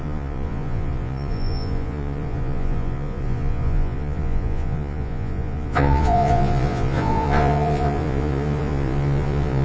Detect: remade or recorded remade